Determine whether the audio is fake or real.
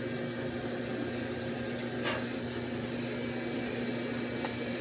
real